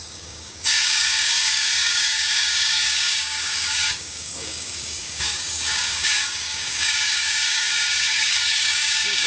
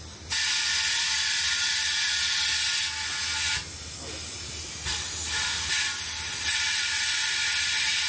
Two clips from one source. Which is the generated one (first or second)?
first